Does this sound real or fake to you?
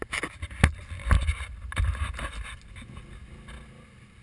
real